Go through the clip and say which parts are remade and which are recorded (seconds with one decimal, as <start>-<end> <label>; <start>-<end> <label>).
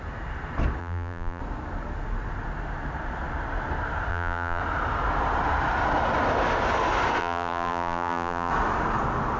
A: 0.0-0.8 recorded; 0.8-1.4 remade; 1.4-4.1 recorded; 4.1-4.6 remade; 4.6-7.2 recorded; 7.2-8.5 remade; 8.5-9.4 recorded